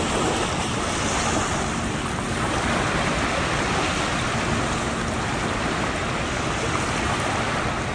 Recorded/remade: recorded